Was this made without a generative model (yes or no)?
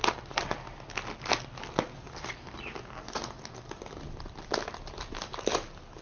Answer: yes